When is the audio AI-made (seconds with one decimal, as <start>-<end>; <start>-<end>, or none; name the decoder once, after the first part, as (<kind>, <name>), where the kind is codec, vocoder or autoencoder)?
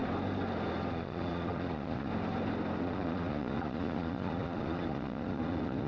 0.9-2.1 (vocoder, Vocos); 2.8-5.9